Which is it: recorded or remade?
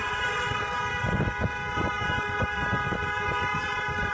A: remade